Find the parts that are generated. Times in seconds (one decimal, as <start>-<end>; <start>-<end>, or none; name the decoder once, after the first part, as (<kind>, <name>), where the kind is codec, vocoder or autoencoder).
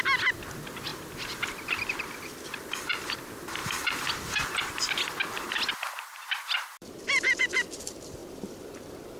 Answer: 0.9-2.6 (vocoder, BigVGAN v2); 3.6-5.7; 6.2-7.4; 8.2-9.2